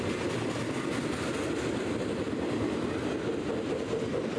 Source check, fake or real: real